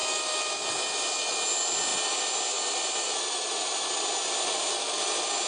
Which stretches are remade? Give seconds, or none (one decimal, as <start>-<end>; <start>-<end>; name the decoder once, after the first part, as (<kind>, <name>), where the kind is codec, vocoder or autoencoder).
none